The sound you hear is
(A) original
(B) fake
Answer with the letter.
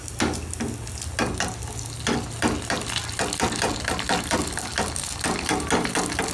A